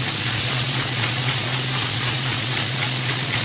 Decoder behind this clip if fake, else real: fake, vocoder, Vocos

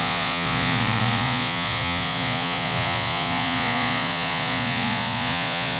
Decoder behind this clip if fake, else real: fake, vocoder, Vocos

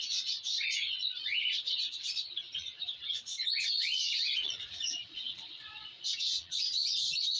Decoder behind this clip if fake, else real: fake, vocoder, Vocos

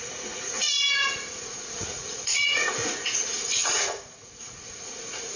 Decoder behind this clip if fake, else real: fake, vocoder, Vocos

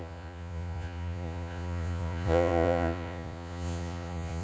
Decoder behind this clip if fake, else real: fake, vocoder, Vocos